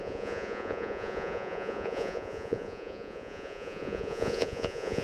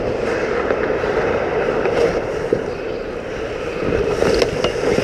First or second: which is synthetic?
first